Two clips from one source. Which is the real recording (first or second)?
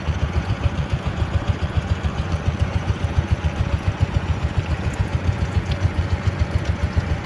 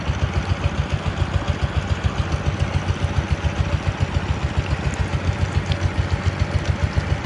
second